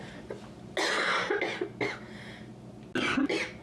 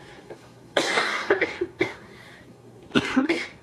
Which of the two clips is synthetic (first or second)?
second